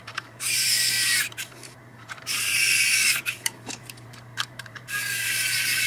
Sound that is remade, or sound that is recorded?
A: remade